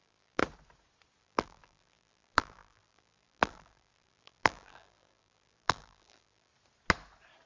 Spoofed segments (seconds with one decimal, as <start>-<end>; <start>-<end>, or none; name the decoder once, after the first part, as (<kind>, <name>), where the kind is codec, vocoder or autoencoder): 0.0-0.4 (vocoder, BigVGAN v2); 1.2-6.5